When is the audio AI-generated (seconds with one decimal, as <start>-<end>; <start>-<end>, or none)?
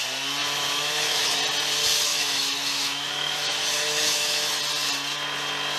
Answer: 0.4-1.4; 2.1-4.6